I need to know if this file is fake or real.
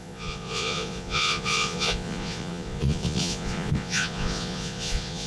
fake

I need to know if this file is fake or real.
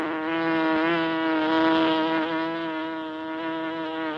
real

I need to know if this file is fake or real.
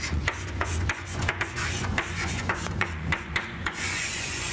fake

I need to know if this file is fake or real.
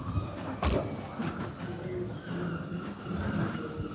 real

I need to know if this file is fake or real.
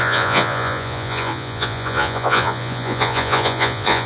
fake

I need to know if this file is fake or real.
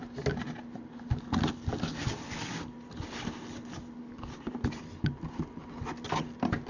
real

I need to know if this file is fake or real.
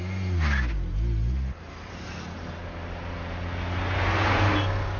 real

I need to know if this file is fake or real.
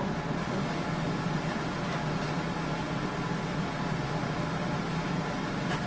real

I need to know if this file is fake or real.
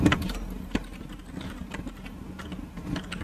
real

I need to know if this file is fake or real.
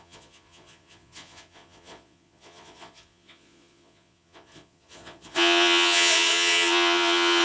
fake